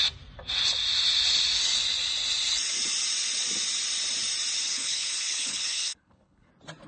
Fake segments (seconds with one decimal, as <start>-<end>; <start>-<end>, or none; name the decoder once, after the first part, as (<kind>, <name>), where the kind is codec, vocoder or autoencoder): 4.6-6.5 (codec, HILCodec)